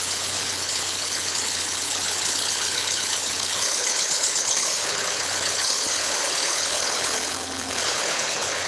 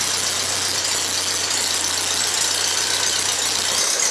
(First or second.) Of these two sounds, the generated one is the first